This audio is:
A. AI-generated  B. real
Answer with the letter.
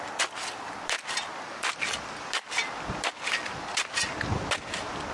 B